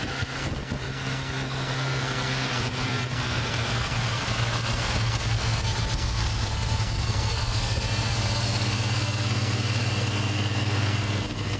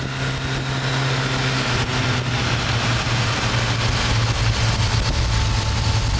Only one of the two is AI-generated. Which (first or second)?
first